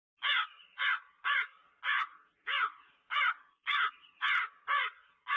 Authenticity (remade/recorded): recorded